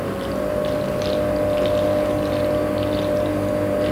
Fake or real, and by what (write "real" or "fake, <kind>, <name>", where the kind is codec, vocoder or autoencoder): real